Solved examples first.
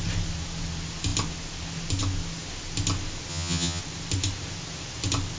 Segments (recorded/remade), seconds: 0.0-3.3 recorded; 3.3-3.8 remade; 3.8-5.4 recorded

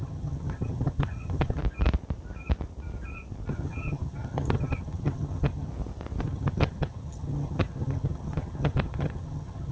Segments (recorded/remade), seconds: 0.0-1.6 remade; 1.6-3.5 recorded; 3.5-5.7 remade; 5.7-6.2 recorded; 6.2-9.7 remade

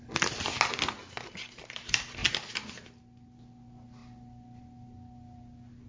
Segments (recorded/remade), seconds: 0.0-5.9 recorded